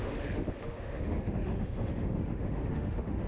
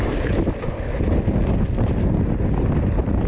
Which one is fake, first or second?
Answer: first